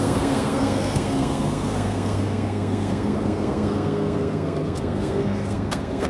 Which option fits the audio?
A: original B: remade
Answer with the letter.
B